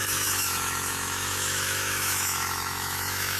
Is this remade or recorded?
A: remade